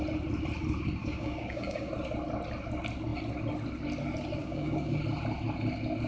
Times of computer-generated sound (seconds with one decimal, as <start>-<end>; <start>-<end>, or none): 1.0-1.9; 4.4-5.0